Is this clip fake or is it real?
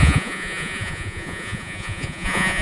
fake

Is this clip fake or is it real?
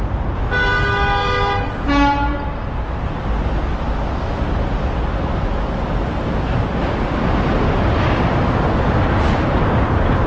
real